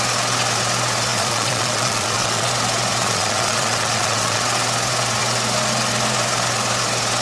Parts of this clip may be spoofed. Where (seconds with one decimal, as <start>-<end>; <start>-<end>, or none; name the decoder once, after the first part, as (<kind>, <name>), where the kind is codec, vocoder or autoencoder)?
1.1-2.5 (vocoder, Vocos); 3.0-4.4